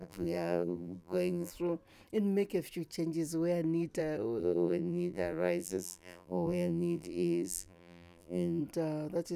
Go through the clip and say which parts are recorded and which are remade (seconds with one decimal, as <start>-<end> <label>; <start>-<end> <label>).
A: 0.0-1.5 remade; 1.5-4.4 recorded; 4.4-8.6 remade; 8.6-9.4 recorded